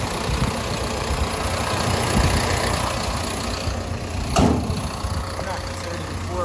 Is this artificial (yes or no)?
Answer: no